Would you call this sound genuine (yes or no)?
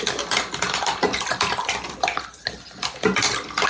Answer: yes